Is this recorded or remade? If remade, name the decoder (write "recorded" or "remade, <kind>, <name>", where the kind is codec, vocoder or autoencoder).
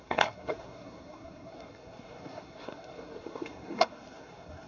remade, codec, SNAC